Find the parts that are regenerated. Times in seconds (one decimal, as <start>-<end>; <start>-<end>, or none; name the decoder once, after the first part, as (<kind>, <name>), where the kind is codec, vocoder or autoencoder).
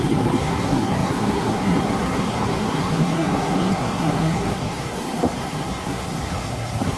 0.0-7.0 (codec, SNAC)